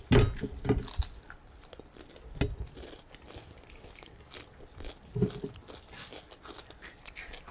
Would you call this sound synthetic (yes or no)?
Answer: no